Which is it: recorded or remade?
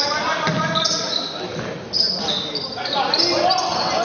recorded